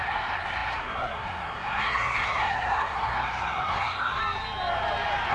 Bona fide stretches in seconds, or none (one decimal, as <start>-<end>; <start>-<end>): 4.2-5.3